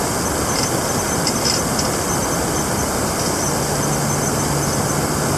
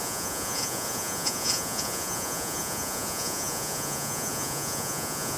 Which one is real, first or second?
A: first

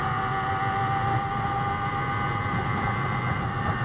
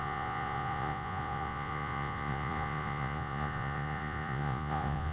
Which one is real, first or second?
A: first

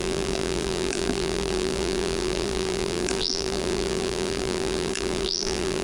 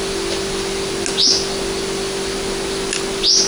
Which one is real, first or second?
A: second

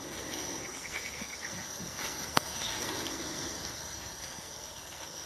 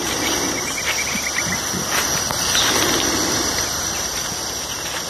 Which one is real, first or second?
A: second